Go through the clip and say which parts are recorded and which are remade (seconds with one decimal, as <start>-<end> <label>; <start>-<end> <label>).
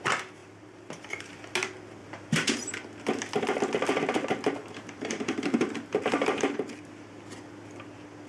0.0-0.4 recorded; 0.4-1.5 remade; 1.5-2.0 recorded; 2.0-2.7 remade; 2.7-4.6 recorded; 4.6-6.8 remade; 6.8-8.3 recorded